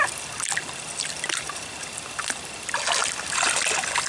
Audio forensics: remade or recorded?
recorded